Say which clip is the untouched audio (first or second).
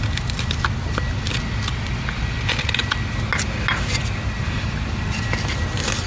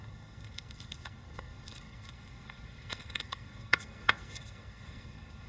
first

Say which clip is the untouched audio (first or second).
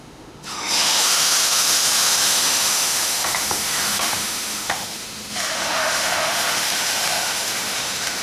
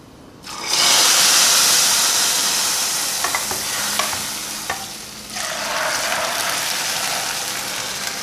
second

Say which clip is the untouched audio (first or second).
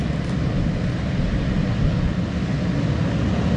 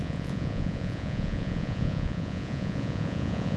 first